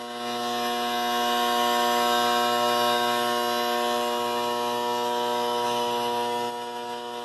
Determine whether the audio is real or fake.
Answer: fake